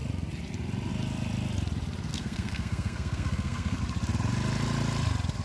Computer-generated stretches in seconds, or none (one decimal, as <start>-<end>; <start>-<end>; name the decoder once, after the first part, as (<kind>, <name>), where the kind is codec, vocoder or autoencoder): 2.1-3.8 (codec, SNAC)